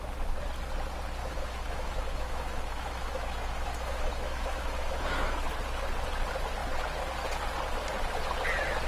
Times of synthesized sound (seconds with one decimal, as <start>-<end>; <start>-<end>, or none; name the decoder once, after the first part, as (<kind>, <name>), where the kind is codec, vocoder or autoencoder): 1.2-5.4 (autoencoder, DAC-VAE)